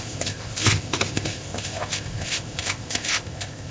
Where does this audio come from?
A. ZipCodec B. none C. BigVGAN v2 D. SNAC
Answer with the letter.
A